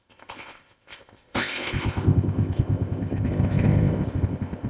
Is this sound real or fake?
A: fake